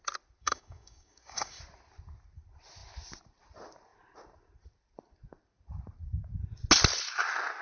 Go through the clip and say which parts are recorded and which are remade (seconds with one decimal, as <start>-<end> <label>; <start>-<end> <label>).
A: 0.0-0.4 recorded; 0.4-1.6 remade; 1.6-7.6 recorded